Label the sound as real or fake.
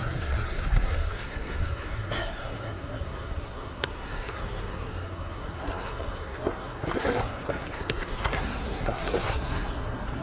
fake